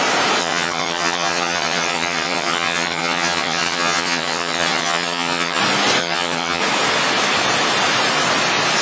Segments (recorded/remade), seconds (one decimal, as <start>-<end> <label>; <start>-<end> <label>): 0.0-0.4 recorded; 0.4-5.6 remade; 5.6-6.0 recorded; 6.0-6.6 remade; 6.6-8.8 recorded